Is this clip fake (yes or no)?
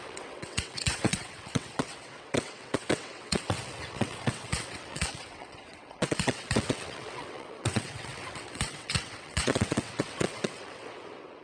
yes